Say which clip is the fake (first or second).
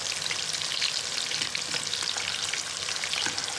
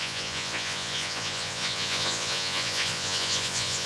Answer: second